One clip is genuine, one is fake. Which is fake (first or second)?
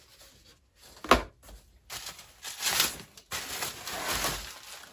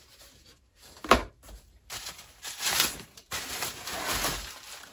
second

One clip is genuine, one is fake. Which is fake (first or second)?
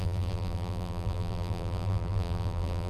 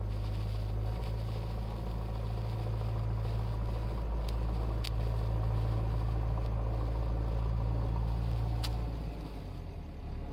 first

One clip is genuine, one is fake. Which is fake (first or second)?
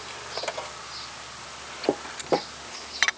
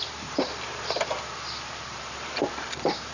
second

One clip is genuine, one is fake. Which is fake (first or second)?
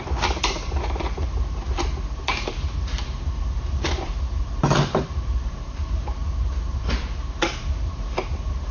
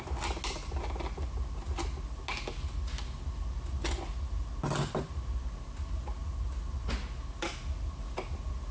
first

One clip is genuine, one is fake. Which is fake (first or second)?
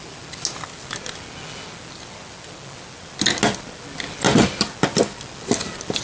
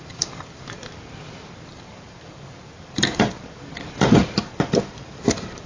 second